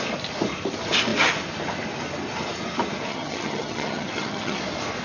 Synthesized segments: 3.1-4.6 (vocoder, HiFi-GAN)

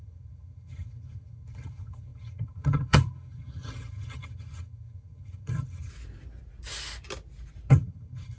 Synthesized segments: 0.0-5.9 (vocoder, HiFi-GAN); 7.7-8.4